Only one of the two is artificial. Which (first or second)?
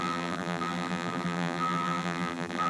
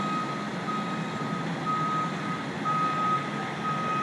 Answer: first